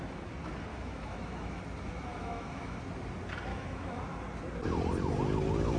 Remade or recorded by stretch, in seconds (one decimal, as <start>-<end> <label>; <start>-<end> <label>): 0.0-0.7 recorded; 0.7-1.6 remade; 1.6-2.1 recorded; 2.1-2.8 remade; 2.8-3.5 recorded; 3.5-4.0 remade; 4.0-5.8 recorded